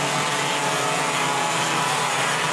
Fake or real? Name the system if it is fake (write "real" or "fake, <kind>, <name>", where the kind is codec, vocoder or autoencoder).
real